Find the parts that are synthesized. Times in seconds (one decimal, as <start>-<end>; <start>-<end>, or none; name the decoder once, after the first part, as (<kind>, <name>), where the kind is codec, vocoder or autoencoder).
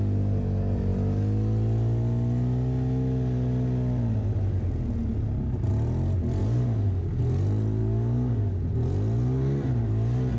6.4-7.2 (codec, DAC); 7.8-8.6